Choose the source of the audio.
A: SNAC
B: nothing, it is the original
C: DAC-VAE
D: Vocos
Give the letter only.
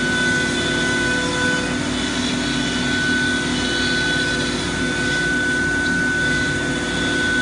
B